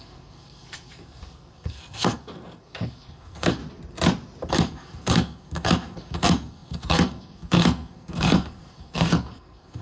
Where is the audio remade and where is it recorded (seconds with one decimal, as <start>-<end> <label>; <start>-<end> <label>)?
0.0-3.6 remade; 3.6-4.5 recorded; 4.5-9.8 remade